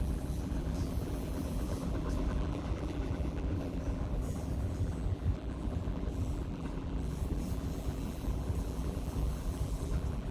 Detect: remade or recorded remade